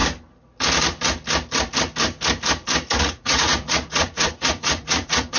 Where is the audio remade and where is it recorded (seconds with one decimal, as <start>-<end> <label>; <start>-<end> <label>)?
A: 0.0-3.0 recorded; 3.0-5.4 remade